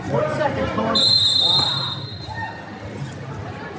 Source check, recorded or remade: recorded